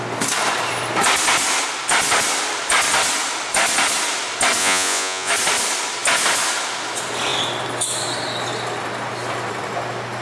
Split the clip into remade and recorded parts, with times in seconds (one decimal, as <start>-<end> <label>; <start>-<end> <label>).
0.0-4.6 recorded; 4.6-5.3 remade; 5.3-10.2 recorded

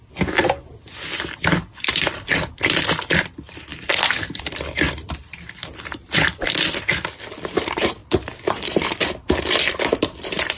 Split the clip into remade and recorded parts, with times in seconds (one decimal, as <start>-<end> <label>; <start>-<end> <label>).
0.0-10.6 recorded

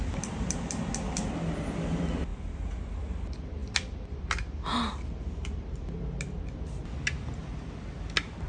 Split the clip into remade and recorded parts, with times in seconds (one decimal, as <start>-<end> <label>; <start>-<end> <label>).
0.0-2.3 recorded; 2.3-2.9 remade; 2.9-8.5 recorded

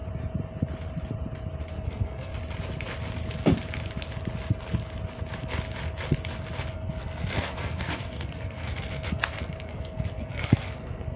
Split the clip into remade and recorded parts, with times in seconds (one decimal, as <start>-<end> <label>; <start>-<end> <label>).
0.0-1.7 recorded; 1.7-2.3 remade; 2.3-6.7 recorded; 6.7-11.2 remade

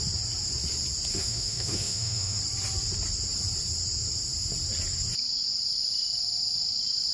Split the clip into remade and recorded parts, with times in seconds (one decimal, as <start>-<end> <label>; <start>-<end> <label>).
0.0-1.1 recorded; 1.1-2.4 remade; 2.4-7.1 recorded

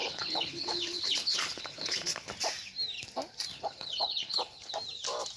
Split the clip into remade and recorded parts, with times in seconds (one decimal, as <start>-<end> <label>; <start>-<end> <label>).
0.0-2.3 remade; 2.3-3.5 recorded; 3.5-4.7 remade; 4.7-5.4 recorded